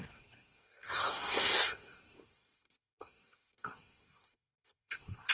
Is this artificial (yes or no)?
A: yes